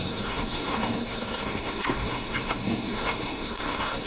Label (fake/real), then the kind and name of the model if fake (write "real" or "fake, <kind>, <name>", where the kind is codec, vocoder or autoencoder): fake, codec, SNAC